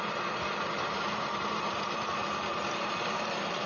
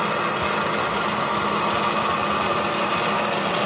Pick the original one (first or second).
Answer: second